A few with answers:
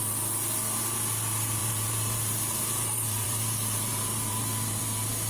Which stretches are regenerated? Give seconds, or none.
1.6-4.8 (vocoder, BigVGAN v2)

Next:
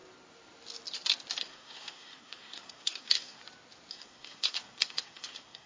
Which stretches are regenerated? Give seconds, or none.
1.4-3.4 (codec, SNAC); 3.9-5.7

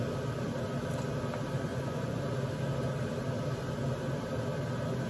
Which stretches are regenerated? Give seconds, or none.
1.7-2.2 (vocoder, Vocos)

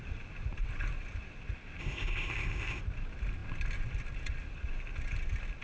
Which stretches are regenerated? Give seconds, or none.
1.8-2.8 (codec, ZipCodec)